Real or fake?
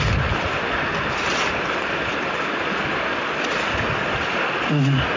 real